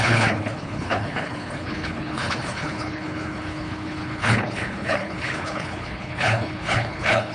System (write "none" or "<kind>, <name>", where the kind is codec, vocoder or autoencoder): codec, HILCodec